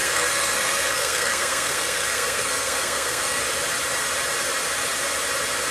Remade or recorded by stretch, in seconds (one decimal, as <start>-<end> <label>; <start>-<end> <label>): 0.0-3.4 remade; 3.4-5.7 recorded